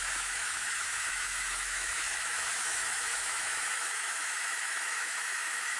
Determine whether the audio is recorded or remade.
remade